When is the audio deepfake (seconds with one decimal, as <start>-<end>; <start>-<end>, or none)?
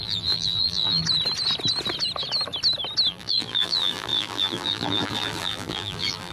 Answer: 0.0-1.0; 3.1-6.3